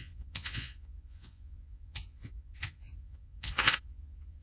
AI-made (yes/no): yes